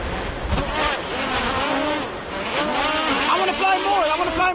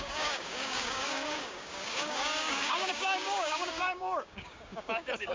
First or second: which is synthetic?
second